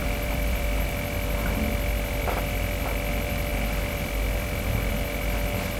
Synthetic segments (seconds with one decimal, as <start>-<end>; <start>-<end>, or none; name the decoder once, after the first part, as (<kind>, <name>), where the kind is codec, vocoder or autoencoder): 0.0-0.9 (vocoder, BigVGAN v2); 3.5-4.9